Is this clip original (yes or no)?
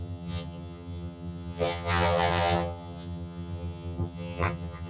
no